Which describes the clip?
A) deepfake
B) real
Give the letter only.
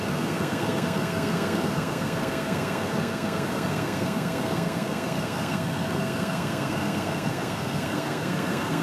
A